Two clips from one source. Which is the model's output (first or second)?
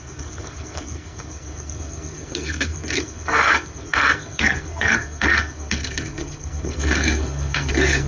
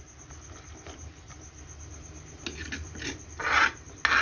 first